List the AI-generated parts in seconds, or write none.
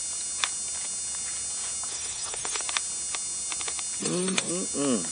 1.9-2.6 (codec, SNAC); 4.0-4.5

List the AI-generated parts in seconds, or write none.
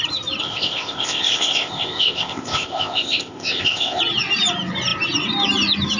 0.4-4.0 (codec, ZipCodec)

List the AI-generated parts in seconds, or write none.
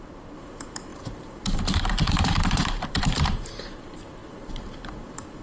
0.0-5.4 (vocoder, BigVGAN v2)